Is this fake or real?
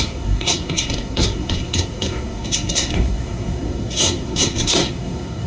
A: fake